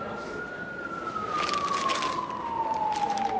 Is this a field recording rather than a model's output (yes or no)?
yes